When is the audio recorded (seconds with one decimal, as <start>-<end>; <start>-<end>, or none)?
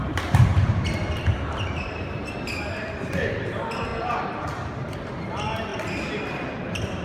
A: 3.9-4.4; 5.7-6.6